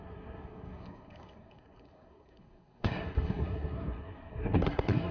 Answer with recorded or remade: remade